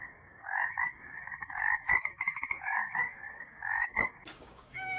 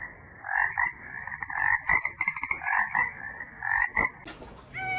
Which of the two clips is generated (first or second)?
first